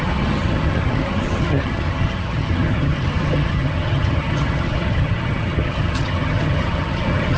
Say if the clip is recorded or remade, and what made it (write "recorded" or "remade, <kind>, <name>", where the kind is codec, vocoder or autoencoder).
remade, vocoder, HiFi-GAN